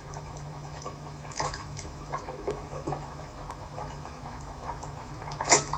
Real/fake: fake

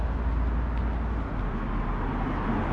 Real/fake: real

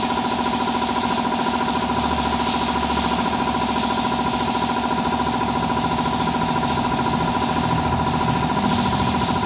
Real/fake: real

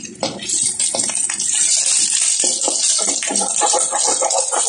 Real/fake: real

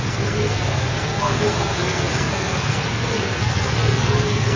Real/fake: fake